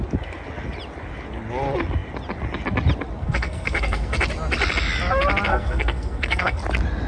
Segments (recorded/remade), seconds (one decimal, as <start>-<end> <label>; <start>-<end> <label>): 0.0-3.2 recorded; 3.2-4.2 remade; 4.2-5.5 recorded; 5.5-6.6 remade; 6.6-7.1 recorded

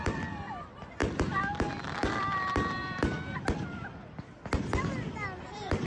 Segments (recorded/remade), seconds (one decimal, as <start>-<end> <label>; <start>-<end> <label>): 0.0-1.0 remade; 1.0-1.7 recorded; 1.7-5.9 remade